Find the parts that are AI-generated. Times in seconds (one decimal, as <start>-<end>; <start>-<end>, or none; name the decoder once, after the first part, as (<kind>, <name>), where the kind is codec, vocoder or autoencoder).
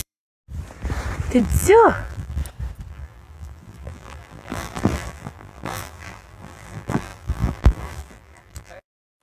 0.0-0.4 (vocoder, BigVGAN v2); 1.4-2.4; 2.9-9.2